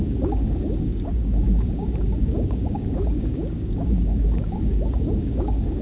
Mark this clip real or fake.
fake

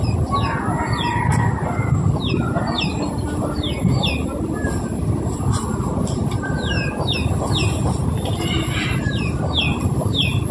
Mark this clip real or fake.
real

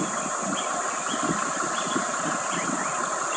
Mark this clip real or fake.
real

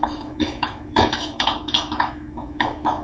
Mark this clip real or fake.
fake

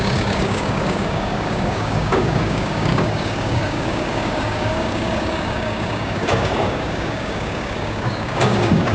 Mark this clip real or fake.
fake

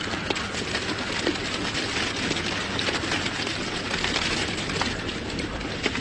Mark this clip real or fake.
real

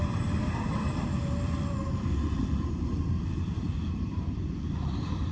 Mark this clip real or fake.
fake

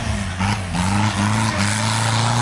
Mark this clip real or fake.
real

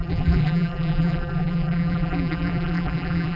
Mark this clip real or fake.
fake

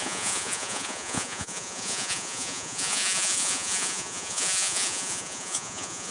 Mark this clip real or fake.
fake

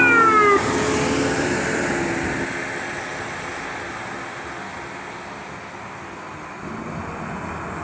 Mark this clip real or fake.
real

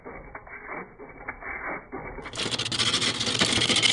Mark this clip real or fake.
real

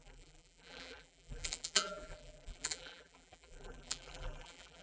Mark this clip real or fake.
fake